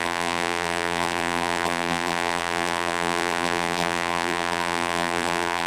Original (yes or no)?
no